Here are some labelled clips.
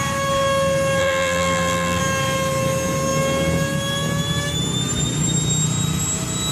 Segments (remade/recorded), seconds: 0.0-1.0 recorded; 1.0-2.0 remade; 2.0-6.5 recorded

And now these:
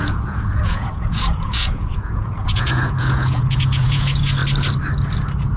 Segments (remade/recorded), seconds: 0.0-4.4 remade; 4.4-5.6 recorded

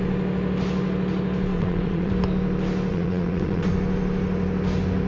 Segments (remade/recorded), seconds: 0.0-1.5 recorded; 1.5-2.1 remade; 2.1-2.9 recorded; 2.9-3.7 remade; 3.7-5.1 recorded